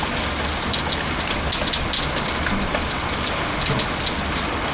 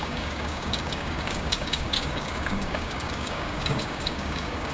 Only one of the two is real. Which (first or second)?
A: first